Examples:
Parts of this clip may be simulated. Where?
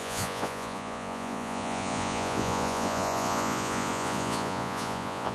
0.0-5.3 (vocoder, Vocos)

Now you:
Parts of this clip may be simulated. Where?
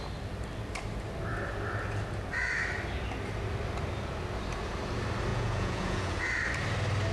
5.3-6.2 (vocoder, Vocos)